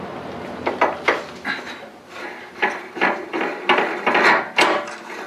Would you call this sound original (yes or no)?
yes